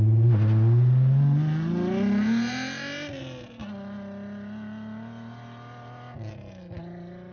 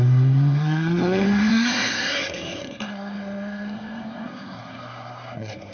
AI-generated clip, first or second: second